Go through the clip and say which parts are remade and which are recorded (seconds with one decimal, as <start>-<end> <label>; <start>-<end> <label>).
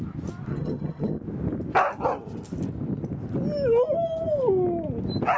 0.0-0.5 recorded; 0.5-1.2 remade; 1.2-5.4 recorded